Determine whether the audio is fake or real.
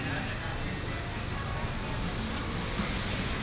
real